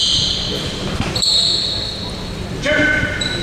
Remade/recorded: remade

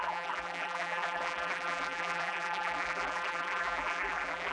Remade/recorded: remade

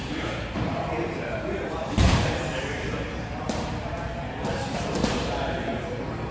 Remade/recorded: remade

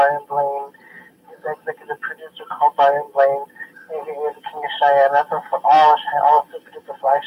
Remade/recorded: recorded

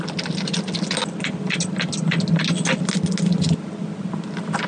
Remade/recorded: recorded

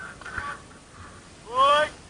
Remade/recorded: remade